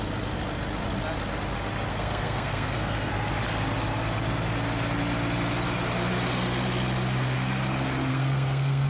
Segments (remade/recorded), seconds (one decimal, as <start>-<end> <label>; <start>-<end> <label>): 0.0-1.9 recorded; 1.9-3.1 remade; 3.1-8.1 recorded; 8.1-8.9 remade